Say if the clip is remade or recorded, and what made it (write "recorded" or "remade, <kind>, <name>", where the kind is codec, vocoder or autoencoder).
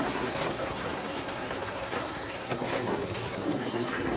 remade, codec, SNAC